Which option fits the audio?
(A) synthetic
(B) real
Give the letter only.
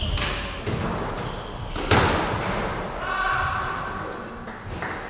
B